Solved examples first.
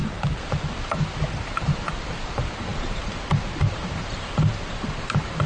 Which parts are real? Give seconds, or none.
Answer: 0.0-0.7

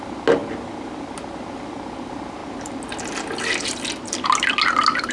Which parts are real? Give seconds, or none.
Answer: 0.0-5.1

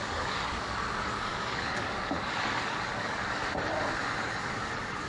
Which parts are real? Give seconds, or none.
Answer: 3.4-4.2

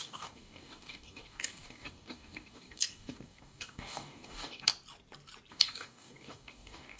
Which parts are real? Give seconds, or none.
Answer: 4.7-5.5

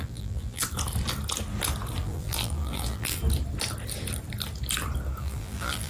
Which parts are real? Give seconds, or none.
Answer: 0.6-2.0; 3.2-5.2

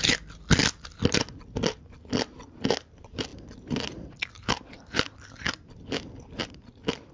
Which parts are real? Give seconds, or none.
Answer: 0.0-7.1

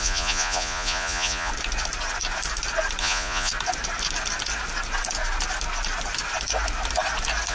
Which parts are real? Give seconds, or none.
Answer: 1.5-3.0; 3.5-7.5

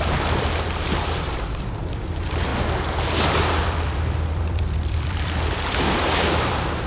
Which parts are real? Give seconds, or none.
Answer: 2.5-3.4